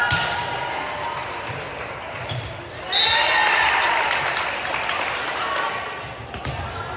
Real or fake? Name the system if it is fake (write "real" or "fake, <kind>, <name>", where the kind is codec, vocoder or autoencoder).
real